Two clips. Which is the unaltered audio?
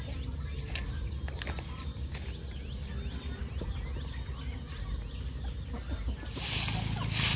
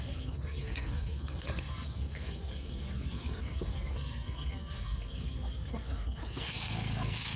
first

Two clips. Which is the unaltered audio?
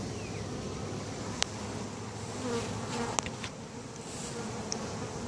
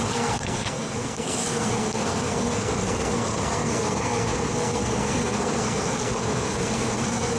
first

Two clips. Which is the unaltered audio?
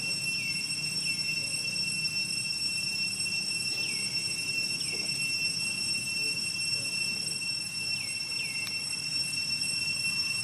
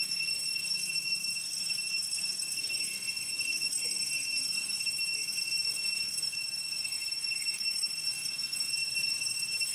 first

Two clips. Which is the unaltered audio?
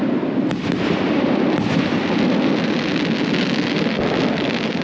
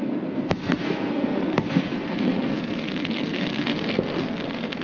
first